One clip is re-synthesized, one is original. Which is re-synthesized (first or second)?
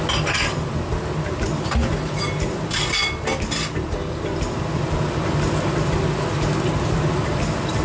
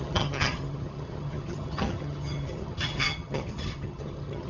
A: second